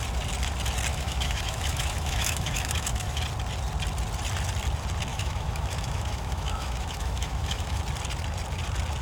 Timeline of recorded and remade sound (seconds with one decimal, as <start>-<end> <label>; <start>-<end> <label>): 0.0-0.9 recorded; 0.9-3.2 remade; 3.2-5.1 recorded; 5.1-7.8 remade; 7.8-9.0 recorded